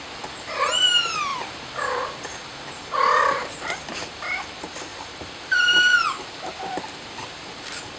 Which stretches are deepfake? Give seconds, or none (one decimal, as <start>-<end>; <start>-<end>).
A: 1.3-3.7; 4.9-5.5